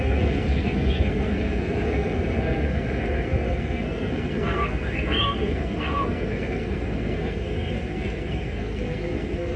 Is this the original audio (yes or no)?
no